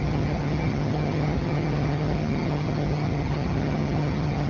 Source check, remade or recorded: remade